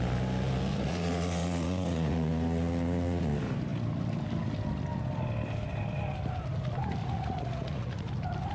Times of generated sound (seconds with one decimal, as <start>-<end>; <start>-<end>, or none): 0.7-2.3; 7.0-8.1